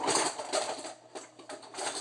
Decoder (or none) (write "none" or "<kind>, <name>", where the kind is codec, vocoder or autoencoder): none